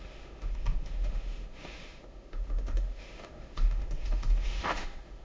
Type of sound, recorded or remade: remade